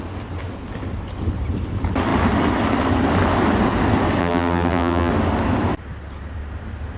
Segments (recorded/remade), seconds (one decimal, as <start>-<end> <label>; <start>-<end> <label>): 0.0-4.2 recorded; 4.2-5.1 remade; 5.1-7.0 recorded